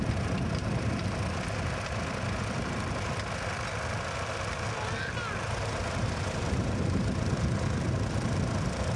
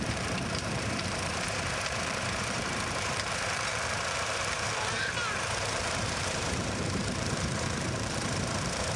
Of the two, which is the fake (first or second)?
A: second